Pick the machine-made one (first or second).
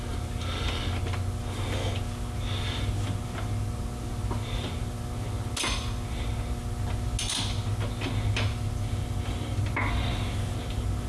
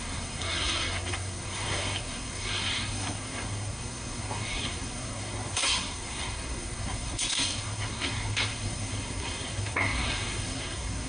second